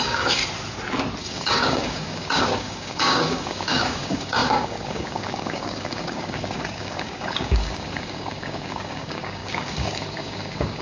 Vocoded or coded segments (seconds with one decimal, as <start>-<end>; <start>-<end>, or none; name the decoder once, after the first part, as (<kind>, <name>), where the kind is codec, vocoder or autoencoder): 0.0-0.4 (codec, DAC); 1.2-10.8